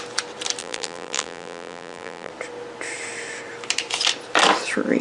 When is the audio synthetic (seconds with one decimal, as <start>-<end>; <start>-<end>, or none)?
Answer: 0.6-2.3